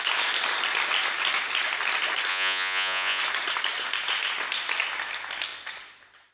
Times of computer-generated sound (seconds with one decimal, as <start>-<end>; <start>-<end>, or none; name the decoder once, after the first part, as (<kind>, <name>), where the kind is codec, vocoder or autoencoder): 2.3-3.2 (vocoder, Vocos)